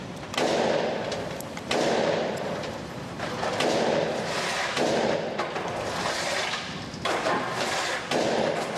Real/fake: fake